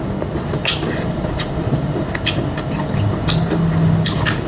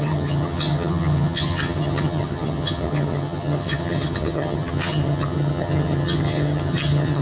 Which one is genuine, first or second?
first